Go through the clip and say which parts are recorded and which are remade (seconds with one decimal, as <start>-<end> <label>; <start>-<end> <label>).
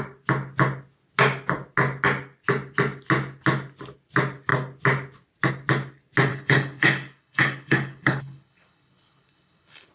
0.0-6.3 recorded; 6.3-9.9 remade